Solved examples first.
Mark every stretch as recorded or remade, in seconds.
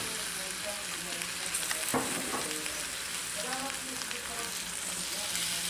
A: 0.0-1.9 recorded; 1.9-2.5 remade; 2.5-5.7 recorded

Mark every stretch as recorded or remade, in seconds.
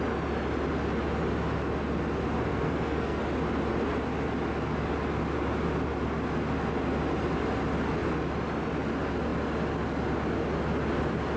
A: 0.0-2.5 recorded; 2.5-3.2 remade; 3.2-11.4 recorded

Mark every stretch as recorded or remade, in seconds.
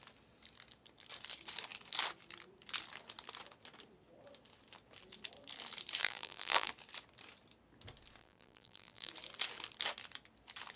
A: 0.0-6.0 recorded; 6.0-6.7 remade; 6.7-8.2 recorded; 8.2-9.1 remade; 9.1-10.8 recorded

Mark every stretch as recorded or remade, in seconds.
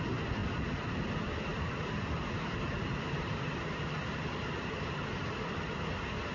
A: 0.0-0.4 recorded; 0.4-1.1 remade; 1.1-1.5 recorded; 1.5-4.7 remade; 4.7-6.3 recorded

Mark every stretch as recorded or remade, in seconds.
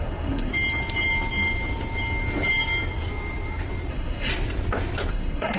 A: 0.0-0.5 remade; 0.5-3.9 recorded; 3.9-4.3 remade; 4.3-5.1 recorded; 5.1-5.6 remade